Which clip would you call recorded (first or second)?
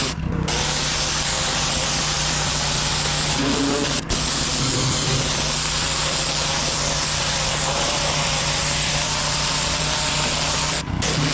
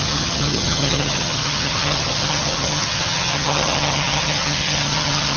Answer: first